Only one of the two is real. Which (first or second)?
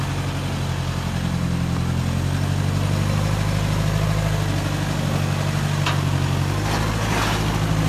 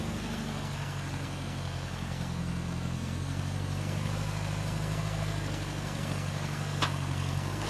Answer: first